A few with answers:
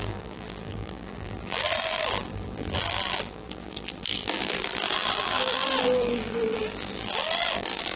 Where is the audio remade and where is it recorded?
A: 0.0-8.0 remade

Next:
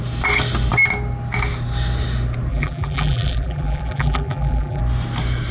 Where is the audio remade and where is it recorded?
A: 0.0-2.5 recorded; 2.5-4.8 remade; 4.8-5.5 recorded

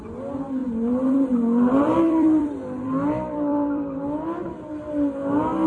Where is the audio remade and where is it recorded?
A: 0.0-0.6 recorded; 0.6-4.0 remade; 4.0-5.7 recorded

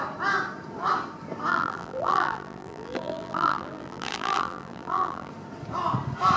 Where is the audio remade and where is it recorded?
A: 0.0-1.5 recorded; 1.5-5.3 remade; 5.3-6.4 recorded

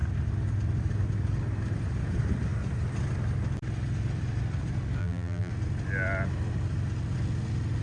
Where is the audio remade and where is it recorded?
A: 0.0-5.0 recorded; 5.0-5.5 remade; 5.5-7.8 recorded

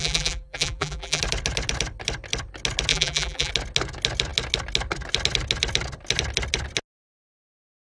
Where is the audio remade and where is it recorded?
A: 0.0-1.2 remade; 1.2-2.9 recorded; 2.9-3.5 remade; 3.5-7.8 recorded

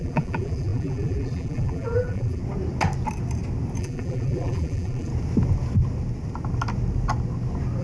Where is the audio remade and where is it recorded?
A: 0.0-2.4 remade; 2.4-3.8 recorded; 3.8-5.1 remade; 5.1-7.8 recorded